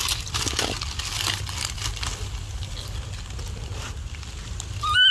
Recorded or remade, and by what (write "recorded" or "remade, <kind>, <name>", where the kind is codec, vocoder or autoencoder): recorded